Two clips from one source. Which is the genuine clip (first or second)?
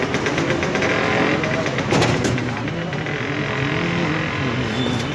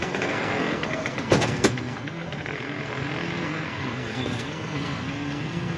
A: first